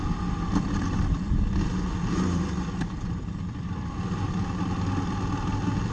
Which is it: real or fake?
real